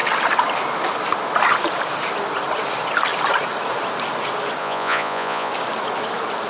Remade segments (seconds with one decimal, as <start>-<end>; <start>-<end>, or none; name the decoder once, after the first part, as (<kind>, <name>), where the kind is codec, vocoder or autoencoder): 4.6-5.5 (vocoder, Vocos)